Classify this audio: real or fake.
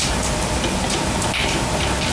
real